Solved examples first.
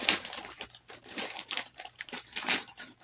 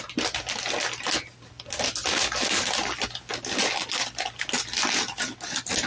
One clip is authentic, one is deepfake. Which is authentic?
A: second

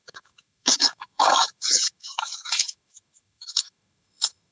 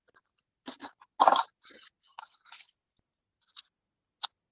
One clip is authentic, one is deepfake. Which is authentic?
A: second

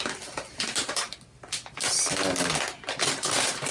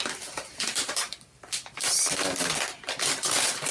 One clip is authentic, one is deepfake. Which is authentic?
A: first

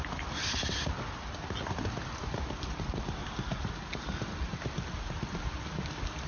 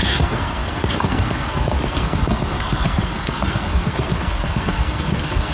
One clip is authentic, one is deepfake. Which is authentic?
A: first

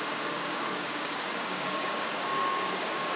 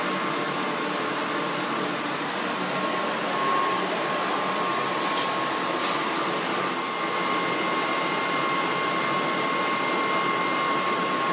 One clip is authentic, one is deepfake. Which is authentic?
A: second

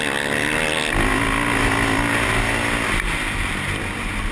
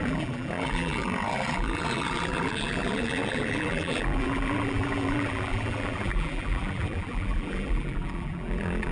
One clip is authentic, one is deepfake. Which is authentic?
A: first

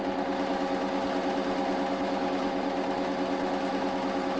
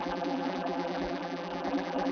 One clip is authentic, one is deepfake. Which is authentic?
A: first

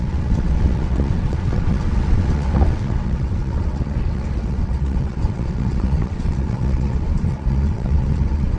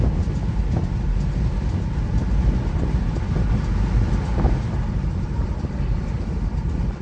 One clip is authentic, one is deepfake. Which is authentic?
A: second